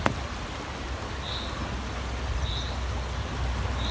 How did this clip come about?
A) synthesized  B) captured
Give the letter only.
B